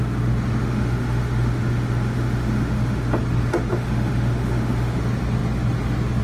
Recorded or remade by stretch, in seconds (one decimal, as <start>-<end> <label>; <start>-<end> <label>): 0.0-0.6 recorded; 0.6-3.2 remade; 3.2-3.7 recorded; 3.7-5.0 remade; 5.0-6.2 recorded